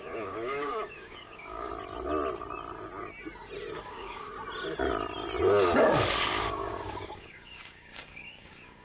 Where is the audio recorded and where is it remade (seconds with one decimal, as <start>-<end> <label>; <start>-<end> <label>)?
0.0-1.7 remade; 1.7-3.8 recorded; 3.8-4.3 remade; 4.3-6.2 recorded; 6.2-8.8 remade